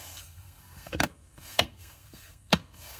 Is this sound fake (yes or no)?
yes